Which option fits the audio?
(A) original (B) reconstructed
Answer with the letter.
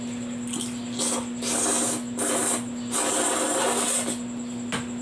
A